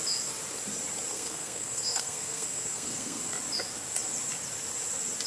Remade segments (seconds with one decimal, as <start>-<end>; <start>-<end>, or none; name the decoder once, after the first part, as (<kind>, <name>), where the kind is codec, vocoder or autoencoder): 1.1-3.2 (codec, SNAC)